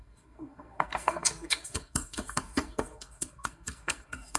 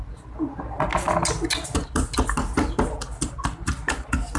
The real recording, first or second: second